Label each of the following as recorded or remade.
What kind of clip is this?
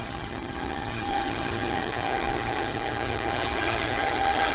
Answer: remade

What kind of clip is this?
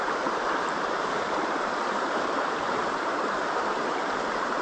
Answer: remade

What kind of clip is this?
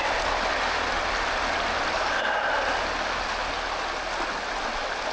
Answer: recorded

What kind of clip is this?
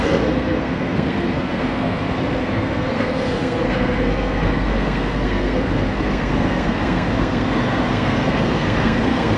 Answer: remade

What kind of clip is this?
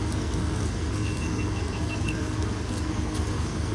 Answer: remade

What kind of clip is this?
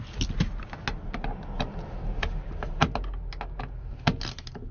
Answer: recorded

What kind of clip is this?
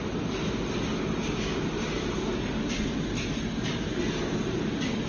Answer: recorded